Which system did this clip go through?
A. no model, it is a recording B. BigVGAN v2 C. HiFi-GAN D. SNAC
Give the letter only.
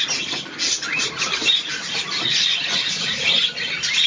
A